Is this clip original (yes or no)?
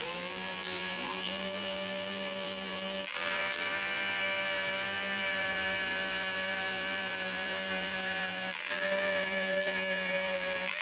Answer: no